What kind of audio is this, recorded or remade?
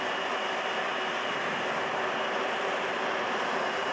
remade